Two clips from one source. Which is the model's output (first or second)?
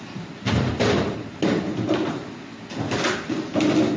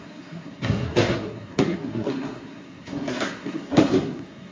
second